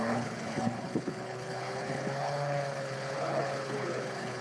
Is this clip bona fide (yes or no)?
no